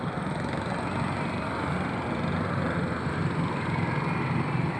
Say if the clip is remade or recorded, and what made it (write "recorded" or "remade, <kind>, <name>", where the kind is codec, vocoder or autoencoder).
recorded